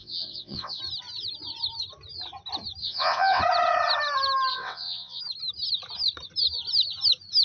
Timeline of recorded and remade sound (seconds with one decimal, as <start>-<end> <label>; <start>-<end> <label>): 0.0-0.8 remade; 0.8-2.8 recorded; 2.8-3.4 remade; 3.4-4.5 recorded; 4.5-5.2 remade; 5.2-7.4 recorded